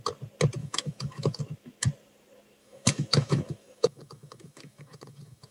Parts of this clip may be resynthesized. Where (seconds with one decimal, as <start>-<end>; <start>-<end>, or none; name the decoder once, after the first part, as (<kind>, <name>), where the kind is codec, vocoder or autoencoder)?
0.6-1.4 (autoencoder, DAC-VAE); 2.6-5.5